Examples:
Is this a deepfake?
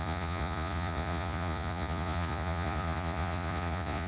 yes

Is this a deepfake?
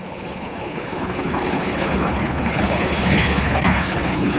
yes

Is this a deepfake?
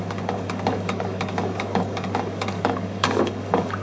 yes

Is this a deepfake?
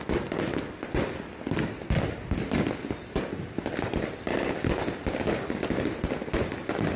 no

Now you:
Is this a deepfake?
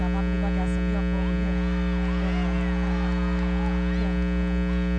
no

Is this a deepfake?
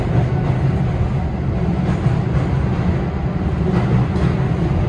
no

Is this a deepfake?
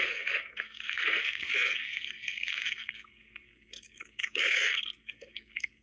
yes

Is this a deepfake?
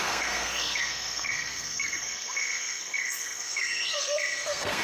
yes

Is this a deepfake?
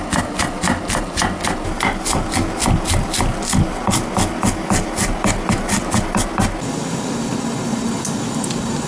no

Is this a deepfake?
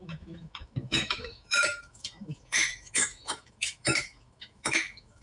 yes